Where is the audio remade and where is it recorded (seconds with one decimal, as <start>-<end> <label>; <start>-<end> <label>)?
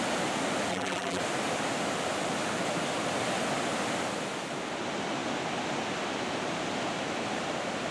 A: 0.0-0.7 recorded; 0.7-1.2 remade; 1.2-7.9 recorded